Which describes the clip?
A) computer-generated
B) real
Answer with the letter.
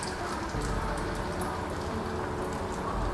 A